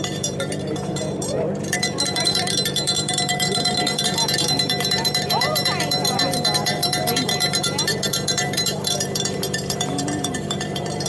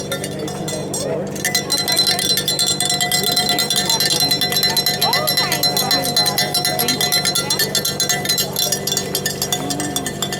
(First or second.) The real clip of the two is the second